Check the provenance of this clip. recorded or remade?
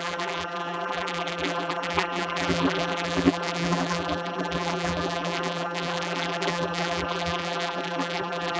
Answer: remade